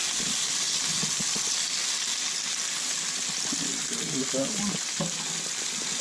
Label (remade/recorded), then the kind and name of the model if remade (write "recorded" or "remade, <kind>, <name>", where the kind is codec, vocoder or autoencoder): recorded